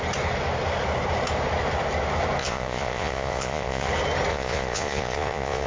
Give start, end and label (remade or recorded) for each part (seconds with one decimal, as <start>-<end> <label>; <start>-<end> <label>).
0.0-2.4 recorded; 2.4-3.9 remade; 3.9-4.3 recorded; 4.3-5.7 remade